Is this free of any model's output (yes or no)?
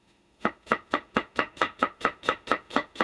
no